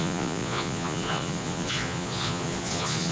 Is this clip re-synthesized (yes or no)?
yes